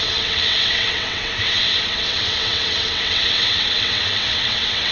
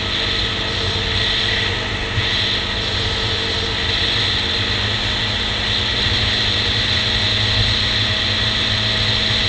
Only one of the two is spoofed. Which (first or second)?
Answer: first